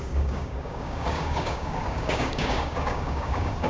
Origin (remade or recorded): remade